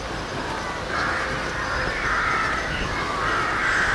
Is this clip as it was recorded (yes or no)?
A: yes